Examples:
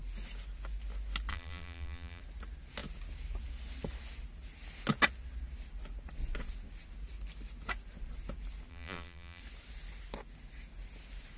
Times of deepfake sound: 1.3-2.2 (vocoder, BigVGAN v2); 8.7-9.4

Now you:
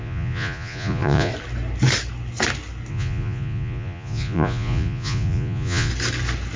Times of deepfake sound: 0.0-1.3 (vocoder, Vocos); 2.9-5.9